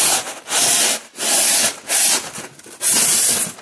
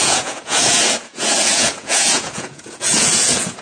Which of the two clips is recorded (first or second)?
first